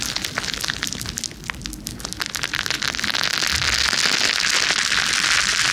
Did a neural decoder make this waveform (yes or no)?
no